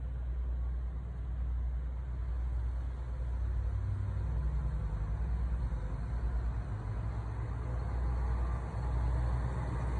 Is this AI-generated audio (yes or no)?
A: no